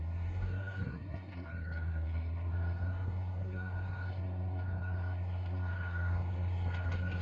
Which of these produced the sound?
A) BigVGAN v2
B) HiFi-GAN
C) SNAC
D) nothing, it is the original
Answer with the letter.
C